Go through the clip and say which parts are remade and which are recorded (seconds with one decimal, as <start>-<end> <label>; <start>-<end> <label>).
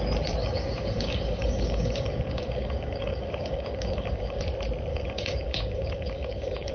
0.0-0.4 recorded; 0.4-4.4 remade; 4.4-4.9 recorded; 4.9-6.7 remade